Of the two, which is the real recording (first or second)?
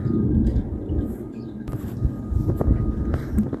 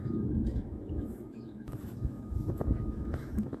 first